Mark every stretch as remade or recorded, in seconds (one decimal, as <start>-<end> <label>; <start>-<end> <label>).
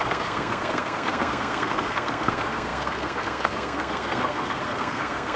0.0-5.4 remade